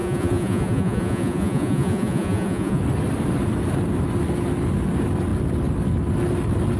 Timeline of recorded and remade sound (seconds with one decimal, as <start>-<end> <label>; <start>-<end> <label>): 0.0-2.8 remade; 2.8-6.8 recorded